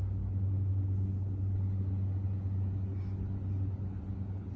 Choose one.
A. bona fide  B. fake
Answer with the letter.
A